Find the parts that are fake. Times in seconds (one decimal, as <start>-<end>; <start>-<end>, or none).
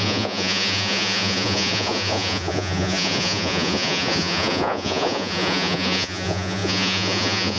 0.0-7.6